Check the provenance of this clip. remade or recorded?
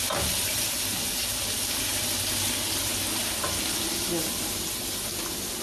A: recorded